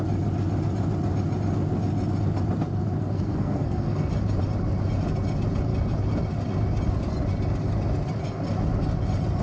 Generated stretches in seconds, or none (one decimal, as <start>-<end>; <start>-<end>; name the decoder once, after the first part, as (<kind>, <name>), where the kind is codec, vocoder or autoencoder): 3.0-4.1 (codec, SNAC)